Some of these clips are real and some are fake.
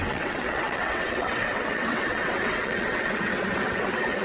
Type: fake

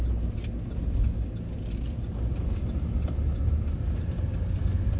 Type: real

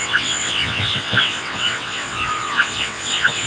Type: fake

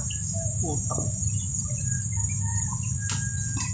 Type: real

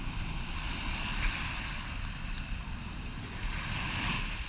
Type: real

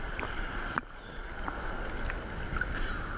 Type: real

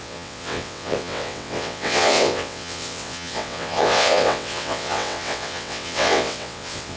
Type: fake